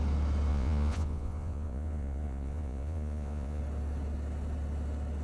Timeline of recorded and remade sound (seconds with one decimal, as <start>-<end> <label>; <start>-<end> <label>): 0.0-0.5 recorded; 0.5-3.6 remade; 3.6-5.2 recorded